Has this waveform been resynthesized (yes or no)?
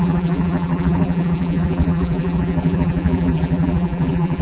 yes